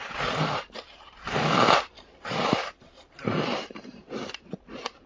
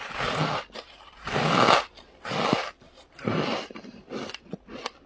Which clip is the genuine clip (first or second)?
second